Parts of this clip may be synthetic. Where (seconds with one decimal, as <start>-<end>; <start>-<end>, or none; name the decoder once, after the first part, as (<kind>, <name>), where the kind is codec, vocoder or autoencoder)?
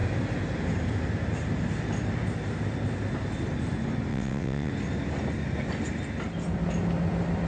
4.1-4.7 (vocoder, WaveNeXt)